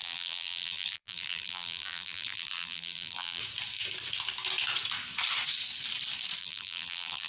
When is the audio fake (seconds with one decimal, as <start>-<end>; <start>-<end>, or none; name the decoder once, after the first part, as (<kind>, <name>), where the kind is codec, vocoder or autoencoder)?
0.0-3.4 (vocoder, BigVGAN v2); 6.4-7.3